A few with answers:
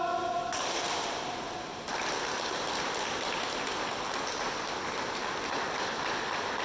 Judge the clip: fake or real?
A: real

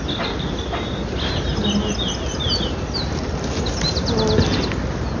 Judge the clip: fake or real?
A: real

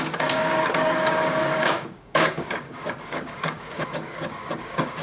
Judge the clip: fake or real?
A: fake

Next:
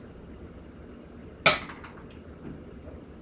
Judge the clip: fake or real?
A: real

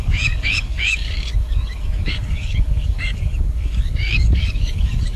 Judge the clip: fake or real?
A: fake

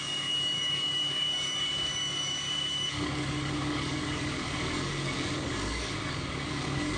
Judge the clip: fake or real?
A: fake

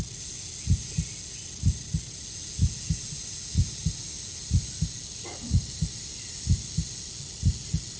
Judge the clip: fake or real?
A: real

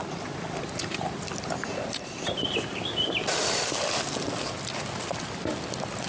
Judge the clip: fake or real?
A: real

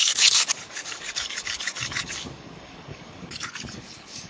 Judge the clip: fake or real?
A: fake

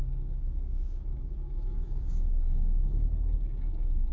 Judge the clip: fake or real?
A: fake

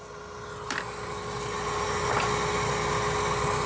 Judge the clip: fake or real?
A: real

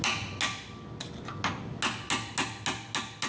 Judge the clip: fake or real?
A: real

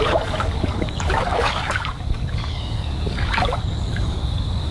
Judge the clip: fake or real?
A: fake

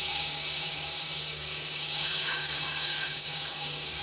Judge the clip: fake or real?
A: fake